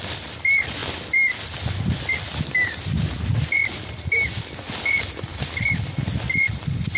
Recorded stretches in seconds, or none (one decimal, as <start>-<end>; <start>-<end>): none

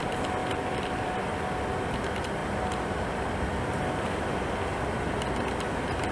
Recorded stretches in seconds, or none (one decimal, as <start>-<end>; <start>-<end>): 0.0-0.4; 1.3-6.1

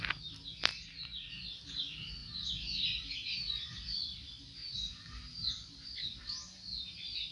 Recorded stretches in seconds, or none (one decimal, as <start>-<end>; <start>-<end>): 0.0-7.3